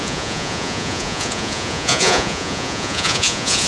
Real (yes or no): no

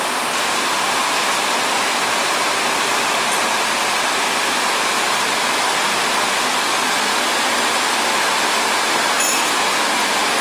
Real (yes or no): yes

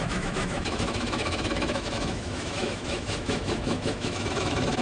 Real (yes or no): no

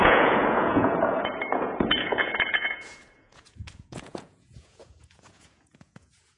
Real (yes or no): no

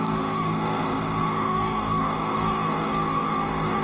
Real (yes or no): no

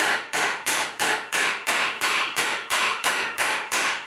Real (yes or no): no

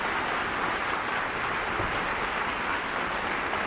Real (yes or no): yes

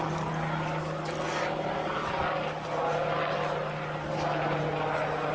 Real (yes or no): yes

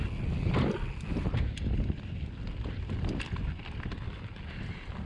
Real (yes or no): yes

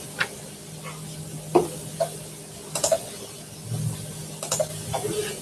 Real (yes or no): yes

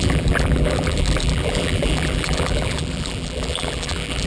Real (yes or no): no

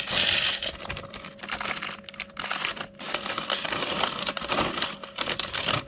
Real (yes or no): yes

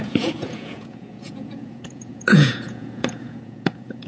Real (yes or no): no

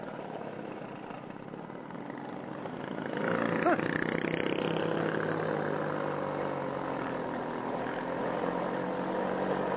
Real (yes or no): yes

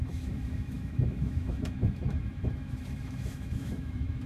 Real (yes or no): no